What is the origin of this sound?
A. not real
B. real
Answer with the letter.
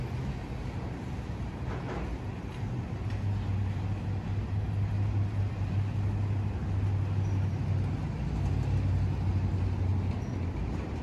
B